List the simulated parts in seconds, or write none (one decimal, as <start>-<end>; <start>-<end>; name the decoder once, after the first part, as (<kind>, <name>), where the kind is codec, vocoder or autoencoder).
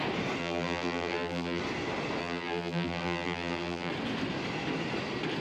0.4-1.6 (vocoder, BigVGAN v2); 2.2-3.9